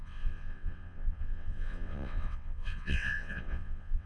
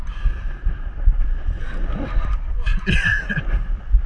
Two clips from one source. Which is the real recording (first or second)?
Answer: second